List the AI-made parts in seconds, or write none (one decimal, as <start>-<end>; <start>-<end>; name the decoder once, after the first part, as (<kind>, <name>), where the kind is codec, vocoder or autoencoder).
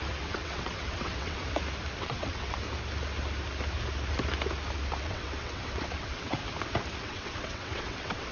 0.0-1.4 (vocoder, WaveNeXt); 2.0-2.6; 5.0-6.4; 7.0-8.3